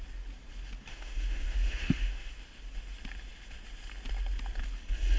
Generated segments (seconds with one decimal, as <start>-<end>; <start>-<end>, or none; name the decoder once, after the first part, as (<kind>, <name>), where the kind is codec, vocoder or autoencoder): 0.9-2.3 (autoencoder, DAC-VAE)